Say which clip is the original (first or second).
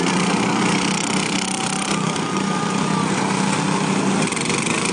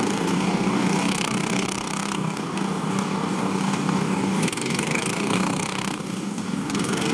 first